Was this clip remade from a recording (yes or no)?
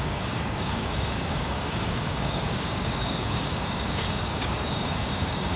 yes